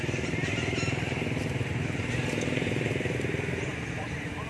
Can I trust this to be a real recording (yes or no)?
no